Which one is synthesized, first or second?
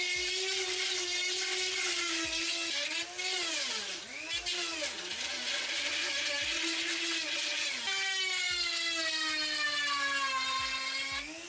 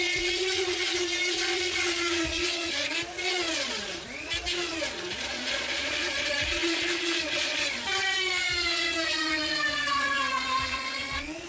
second